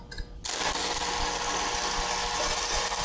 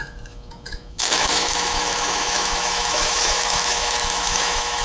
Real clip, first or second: first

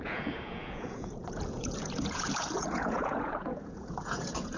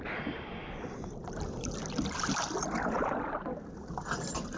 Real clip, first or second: second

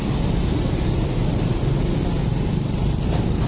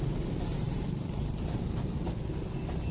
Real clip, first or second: first